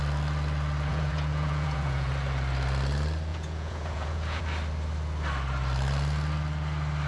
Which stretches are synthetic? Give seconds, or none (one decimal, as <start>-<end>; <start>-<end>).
0.9-2.1; 3.3-4.4